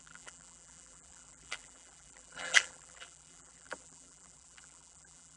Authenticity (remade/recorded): remade